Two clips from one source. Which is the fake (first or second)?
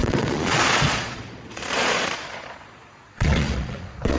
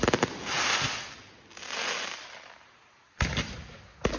first